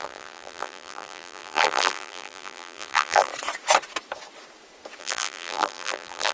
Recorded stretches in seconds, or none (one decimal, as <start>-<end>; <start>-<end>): 3.3-5.0